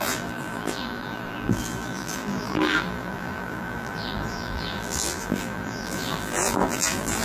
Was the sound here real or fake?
fake